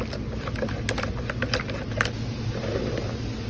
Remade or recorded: recorded